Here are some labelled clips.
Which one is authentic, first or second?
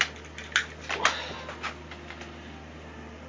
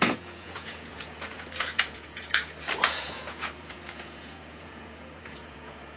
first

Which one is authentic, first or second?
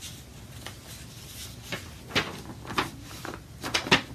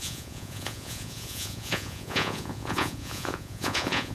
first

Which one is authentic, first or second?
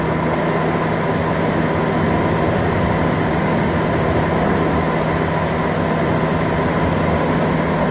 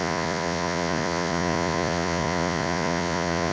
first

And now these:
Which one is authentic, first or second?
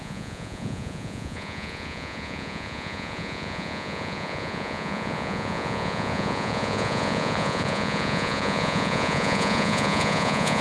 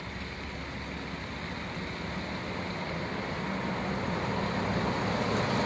second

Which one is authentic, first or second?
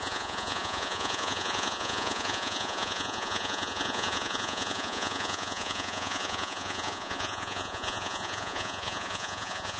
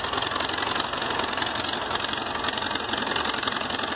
second